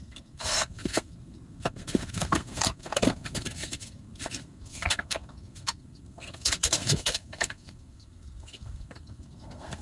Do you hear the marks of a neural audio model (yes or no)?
yes